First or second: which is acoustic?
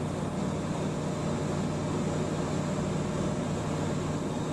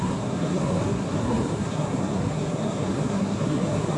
first